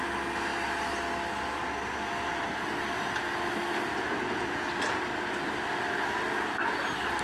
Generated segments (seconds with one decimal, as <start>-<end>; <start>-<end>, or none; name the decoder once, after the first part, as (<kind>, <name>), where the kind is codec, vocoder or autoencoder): none

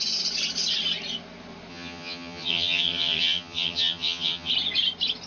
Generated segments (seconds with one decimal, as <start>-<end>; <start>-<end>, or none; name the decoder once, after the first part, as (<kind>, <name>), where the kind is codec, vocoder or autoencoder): 1.7-4.5 (vocoder, HiFi-GAN)

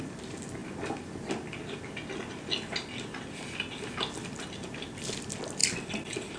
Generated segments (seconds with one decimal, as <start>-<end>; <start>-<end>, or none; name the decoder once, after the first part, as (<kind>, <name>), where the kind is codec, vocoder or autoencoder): none

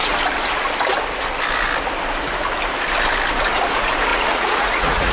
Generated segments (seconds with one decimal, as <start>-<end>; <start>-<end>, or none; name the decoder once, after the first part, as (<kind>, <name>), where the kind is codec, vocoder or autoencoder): 4.1-5.1 (vocoder, Vocos)

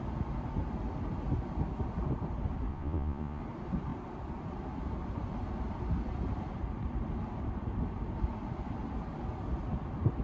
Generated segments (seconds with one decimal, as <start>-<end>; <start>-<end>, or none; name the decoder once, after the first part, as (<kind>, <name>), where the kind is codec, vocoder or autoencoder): 2.7-3.4 (vocoder, Vocos)

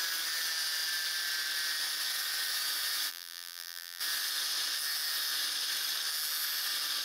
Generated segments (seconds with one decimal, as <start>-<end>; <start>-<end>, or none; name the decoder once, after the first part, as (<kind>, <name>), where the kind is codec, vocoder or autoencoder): 3.1-4.0 (vocoder, BigVGAN v2)